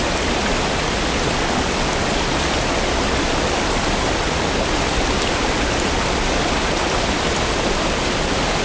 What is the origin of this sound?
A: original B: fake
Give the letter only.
A